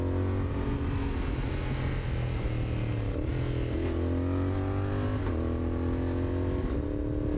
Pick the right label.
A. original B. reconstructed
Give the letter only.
A